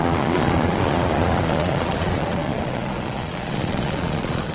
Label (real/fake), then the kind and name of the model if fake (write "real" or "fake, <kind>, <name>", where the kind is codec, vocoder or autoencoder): fake, vocoder, Vocos